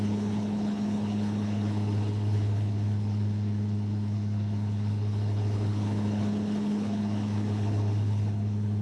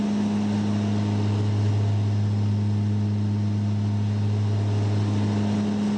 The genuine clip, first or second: second